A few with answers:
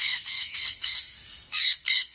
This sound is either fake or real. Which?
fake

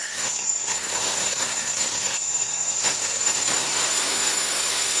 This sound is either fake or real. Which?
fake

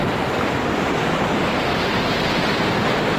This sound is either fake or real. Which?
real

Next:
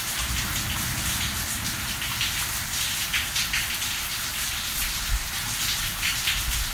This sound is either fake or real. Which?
real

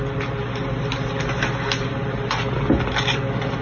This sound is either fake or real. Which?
real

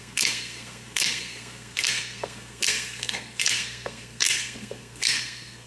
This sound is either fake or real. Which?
fake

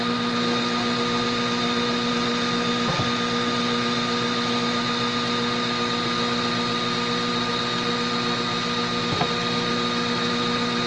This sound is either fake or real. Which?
real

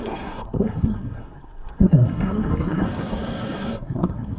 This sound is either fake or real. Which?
fake